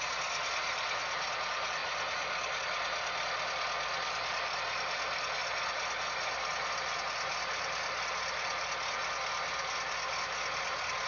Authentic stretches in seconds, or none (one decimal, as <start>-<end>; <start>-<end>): 0.0-11.1